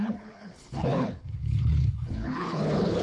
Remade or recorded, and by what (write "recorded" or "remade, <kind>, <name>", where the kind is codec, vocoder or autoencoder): remade, codec, HILCodec